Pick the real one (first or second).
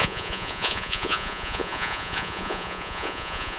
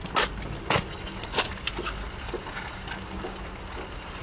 second